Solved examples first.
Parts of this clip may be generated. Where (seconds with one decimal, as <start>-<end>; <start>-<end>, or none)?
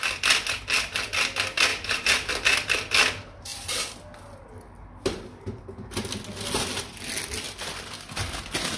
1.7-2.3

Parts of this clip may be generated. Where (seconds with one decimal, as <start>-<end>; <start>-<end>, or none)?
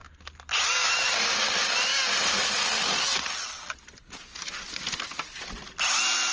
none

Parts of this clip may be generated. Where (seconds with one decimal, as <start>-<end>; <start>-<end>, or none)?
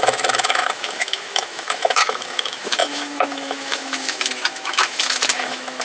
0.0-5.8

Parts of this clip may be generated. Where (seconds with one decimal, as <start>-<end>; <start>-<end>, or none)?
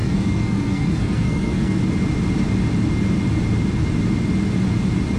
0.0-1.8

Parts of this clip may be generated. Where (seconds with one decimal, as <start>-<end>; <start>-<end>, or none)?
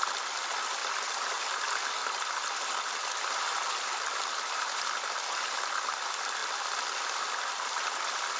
0.8-1.4; 2.0-3.1; 6.4-7.1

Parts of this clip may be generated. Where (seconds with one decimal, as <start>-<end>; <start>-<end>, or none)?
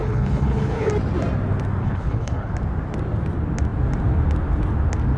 0.0-0.9; 1.8-2.5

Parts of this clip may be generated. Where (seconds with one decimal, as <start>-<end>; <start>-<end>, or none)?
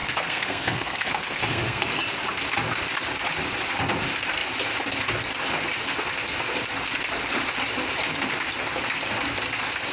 0.0-2.0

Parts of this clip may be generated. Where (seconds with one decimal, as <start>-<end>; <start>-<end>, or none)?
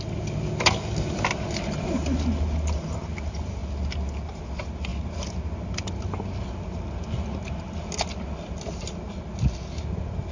none